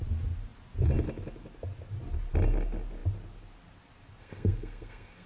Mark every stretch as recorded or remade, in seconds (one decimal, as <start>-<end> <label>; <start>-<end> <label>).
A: 0.0-4.2 recorded; 4.2-5.3 remade